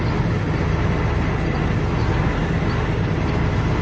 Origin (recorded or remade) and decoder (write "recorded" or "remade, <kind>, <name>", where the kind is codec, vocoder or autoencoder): recorded